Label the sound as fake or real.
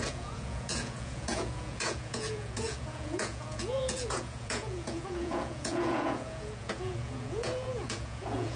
fake